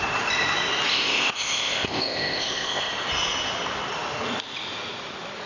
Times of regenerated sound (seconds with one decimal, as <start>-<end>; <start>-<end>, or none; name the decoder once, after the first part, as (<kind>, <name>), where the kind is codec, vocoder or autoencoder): 0.9-2.9 (codec, ZipCodec)